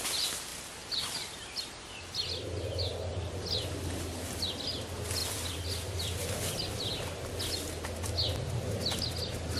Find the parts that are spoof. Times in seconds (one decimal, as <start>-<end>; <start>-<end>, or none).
none